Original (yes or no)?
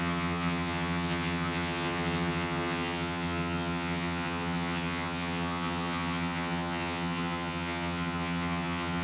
no